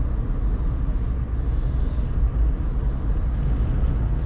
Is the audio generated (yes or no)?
no